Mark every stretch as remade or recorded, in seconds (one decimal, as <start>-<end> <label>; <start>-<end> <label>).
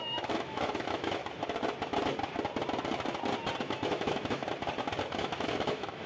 0.0-1.2 remade; 1.2-3.6 recorded; 3.6-4.4 remade; 4.4-5.1 recorded; 5.1-6.1 remade